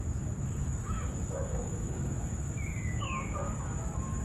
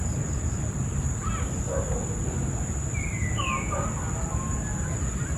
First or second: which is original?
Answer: second